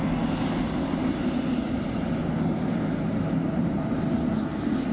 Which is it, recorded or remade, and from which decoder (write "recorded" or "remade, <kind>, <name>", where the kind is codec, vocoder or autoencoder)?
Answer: recorded